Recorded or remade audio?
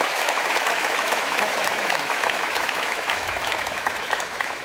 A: remade